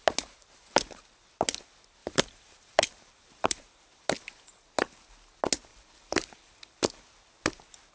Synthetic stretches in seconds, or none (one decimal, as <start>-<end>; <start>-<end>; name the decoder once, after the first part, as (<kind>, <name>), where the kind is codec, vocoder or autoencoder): 0.4-1.0 (vocoder, BigVGAN v2); 2.0-3.9; 5.7-7.0